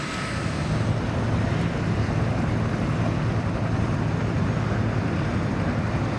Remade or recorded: recorded